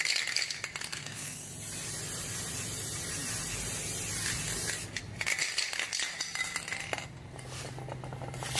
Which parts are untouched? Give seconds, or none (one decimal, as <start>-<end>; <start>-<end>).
0.0-0.9; 1.5-8.6